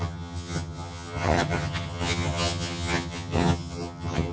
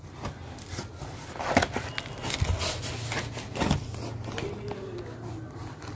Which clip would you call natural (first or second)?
second